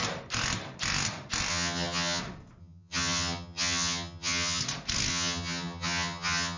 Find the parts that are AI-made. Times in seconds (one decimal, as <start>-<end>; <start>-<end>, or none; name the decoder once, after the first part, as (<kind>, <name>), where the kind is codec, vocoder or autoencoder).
1.5-2.2 (vocoder, HiFi-GAN); 2.6-4.6; 5.1-6.6